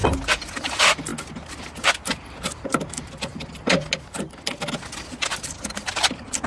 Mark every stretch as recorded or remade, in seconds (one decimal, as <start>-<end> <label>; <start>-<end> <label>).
0.0-6.5 recorded